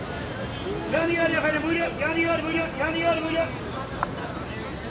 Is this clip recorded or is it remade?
recorded